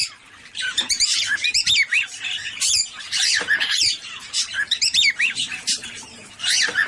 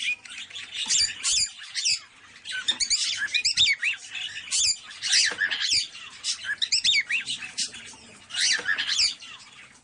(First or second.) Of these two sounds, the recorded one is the second